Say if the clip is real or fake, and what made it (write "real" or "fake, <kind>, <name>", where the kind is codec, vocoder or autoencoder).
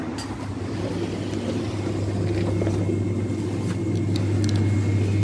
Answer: real